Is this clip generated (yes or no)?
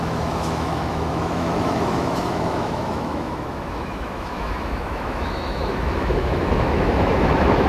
yes